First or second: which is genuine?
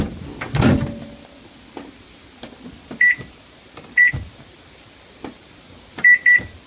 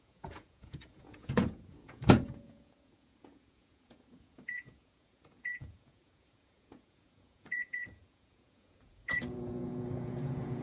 first